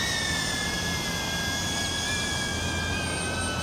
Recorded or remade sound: recorded